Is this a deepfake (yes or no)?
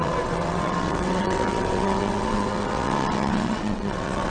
yes